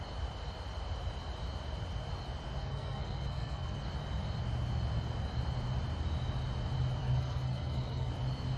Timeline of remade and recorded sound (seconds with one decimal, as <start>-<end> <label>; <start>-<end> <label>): 0.0-2.6 recorded; 2.6-3.9 remade; 3.9-7.0 recorded; 7.0-8.1 remade; 8.1-8.6 recorded